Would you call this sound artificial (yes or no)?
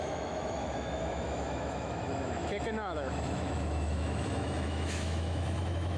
yes